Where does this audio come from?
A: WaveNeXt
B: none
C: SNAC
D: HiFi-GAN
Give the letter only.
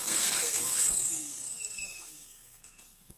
C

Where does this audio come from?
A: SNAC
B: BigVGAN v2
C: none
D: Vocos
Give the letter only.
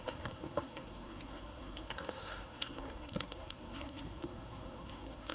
A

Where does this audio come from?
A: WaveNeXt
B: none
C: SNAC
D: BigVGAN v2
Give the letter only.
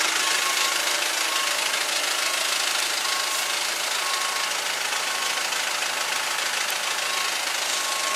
B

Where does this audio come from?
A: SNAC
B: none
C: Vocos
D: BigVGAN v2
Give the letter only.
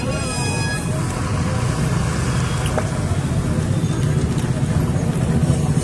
B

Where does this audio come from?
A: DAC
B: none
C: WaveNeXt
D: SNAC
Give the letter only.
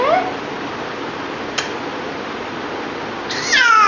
B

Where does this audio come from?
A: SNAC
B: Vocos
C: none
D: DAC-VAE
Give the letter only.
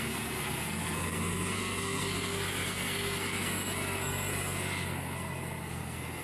A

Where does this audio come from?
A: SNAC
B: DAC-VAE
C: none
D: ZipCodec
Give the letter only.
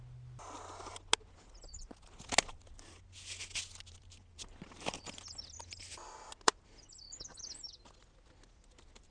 C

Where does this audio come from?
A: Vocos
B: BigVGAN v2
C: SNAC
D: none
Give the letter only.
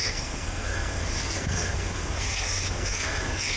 C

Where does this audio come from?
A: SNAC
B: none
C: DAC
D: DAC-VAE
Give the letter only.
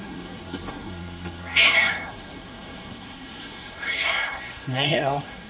A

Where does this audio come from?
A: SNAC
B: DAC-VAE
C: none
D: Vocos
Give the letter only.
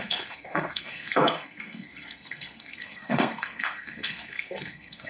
A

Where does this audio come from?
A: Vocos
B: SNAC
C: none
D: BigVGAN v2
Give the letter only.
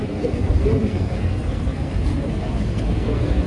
B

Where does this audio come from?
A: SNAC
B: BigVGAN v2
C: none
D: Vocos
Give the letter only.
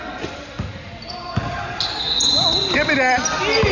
C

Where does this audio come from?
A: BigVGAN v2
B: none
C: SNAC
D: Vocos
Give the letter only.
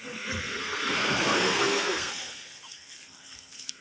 C